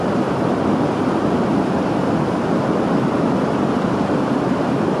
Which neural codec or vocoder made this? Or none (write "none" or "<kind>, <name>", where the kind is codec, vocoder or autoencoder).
none